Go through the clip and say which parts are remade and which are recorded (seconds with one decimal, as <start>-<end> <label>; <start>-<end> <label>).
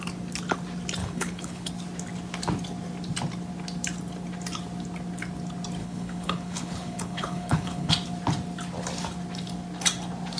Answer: 0.0-1.0 recorded; 1.0-1.7 remade; 1.7-5.8 recorded; 5.8-7.9 remade; 7.9-10.4 recorded